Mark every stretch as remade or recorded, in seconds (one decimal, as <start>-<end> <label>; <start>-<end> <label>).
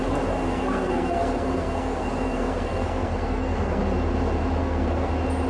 0.0-0.5 recorded; 0.5-3.8 remade; 3.8-4.6 recorded; 4.6-5.1 remade; 5.1-5.5 recorded